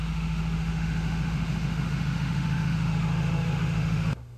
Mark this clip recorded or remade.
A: remade